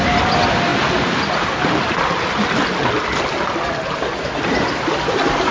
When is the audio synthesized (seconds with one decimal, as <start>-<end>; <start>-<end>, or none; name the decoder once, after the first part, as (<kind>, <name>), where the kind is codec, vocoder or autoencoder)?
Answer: none